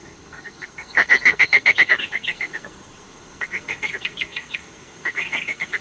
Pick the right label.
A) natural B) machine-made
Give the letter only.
B